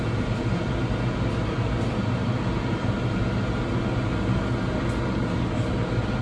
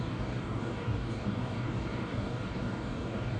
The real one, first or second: first